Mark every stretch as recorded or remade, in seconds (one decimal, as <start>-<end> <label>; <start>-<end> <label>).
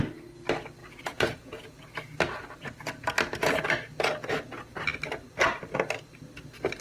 0.0-0.8 recorded; 0.8-1.8 remade; 1.8-6.8 recorded